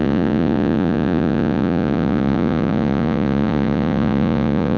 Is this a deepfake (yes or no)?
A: yes